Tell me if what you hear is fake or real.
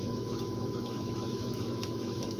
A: fake